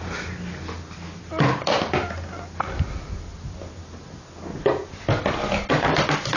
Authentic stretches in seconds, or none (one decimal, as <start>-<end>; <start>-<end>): 0.0-6.4

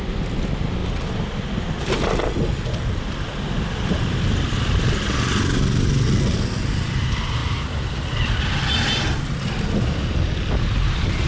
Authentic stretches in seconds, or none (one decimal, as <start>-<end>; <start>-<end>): 0.0-11.3